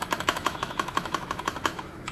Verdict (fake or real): fake